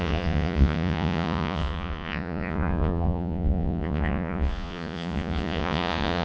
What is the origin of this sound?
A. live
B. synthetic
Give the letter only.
B